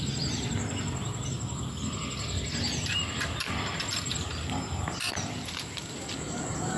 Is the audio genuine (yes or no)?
yes